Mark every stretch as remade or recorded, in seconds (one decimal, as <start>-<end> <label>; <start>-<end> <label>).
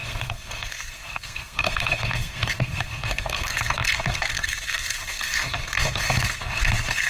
0.0-7.1 remade